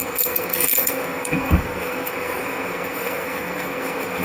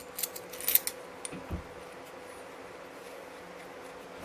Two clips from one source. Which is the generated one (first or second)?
first